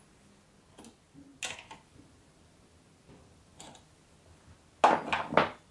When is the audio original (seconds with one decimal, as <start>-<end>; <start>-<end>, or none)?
0.0-5.7